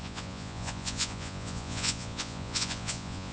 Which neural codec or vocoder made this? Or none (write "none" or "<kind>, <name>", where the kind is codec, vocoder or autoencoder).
vocoder, Vocos